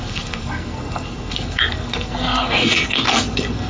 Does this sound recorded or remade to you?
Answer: remade